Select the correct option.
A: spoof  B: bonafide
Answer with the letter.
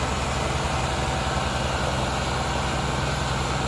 B